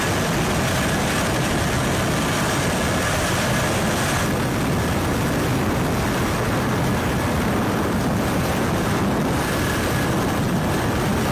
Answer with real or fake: real